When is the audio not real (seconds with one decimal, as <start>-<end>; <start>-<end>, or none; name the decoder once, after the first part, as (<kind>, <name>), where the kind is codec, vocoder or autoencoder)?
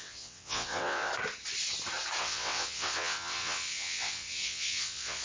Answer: 0.0-1.1 (vocoder, WaveNeXt); 2.2-5.2